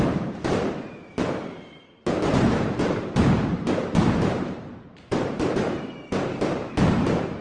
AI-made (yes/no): yes